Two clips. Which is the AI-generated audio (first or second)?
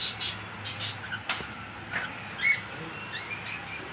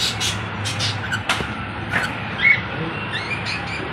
second